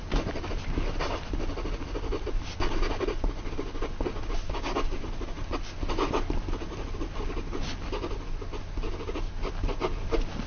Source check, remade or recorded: recorded